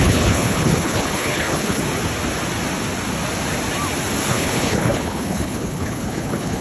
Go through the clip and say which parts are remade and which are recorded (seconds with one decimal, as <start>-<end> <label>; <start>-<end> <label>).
0.0-1.8 remade; 1.8-4.3 recorded; 4.3-6.6 remade